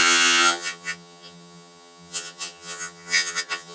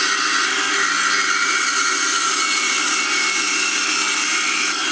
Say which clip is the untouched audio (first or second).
second